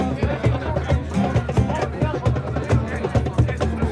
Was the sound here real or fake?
real